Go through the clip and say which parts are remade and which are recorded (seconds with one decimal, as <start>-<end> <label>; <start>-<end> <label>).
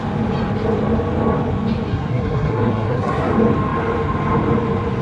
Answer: 0.0-1.9 recorded; 1.9-3.3 remade; 3.3-5.0 recorded